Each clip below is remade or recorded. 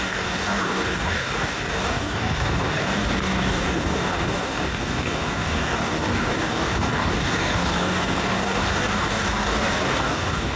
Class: remade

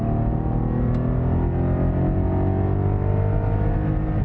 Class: recorded